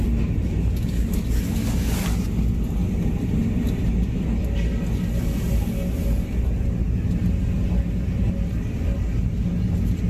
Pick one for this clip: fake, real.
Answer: real